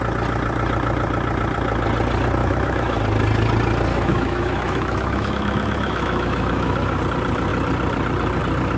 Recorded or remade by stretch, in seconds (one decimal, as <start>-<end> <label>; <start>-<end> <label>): 0.0-2.4 recorded; 2.4-3.0 remade; 3.0-3.9 recorded; 3.9-7.0 remade; 7.0-8.8 recorded